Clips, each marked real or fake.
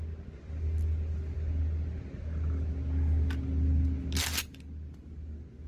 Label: real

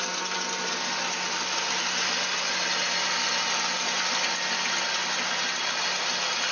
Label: real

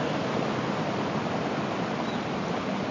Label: real